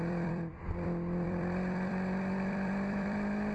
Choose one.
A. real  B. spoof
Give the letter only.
B